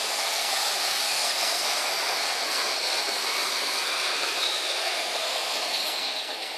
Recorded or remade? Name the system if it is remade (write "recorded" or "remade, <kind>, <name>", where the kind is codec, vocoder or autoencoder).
remade, codec, SNAC